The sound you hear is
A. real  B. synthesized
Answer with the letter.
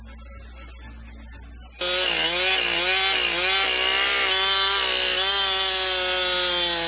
A